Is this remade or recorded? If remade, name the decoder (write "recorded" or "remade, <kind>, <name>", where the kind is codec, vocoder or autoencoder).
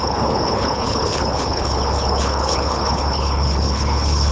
remade, codec, HILCodec